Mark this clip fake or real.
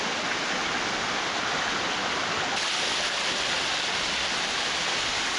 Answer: real